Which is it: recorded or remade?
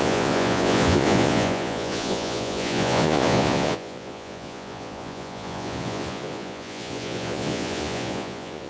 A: remade